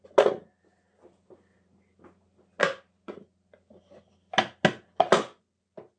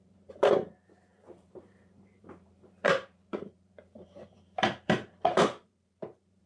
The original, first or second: first